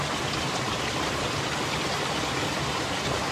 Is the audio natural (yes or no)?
yes